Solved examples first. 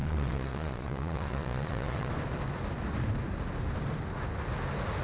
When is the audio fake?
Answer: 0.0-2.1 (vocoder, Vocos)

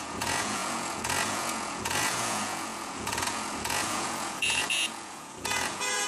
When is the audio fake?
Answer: 0.0-6.1 (vocoder, Vocos)

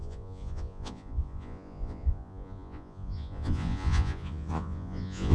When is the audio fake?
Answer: 0.0-5.3 (vocoder, Vocos)

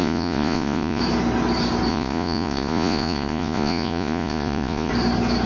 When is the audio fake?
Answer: 0.0-1.0 (vocoder, Vocos); 1.9-4.9

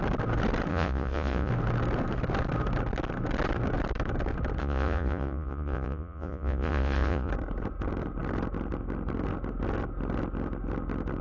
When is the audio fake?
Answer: 0.7-1.5 (vocoder, Vocos); 4.6-7.3

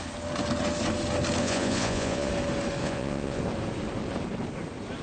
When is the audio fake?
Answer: 1.4-2.3 (vocoder, Vocos); 2.8-3.4

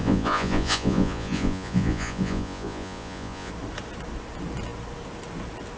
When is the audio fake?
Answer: 0.0-3.5 (vocoder, Vocos)

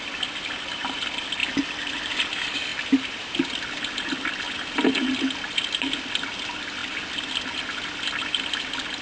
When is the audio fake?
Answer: none